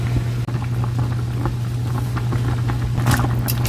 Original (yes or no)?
yes